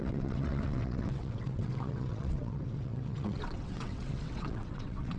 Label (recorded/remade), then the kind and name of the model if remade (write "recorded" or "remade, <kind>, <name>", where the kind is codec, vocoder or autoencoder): remade, vocoder, WaveNeXt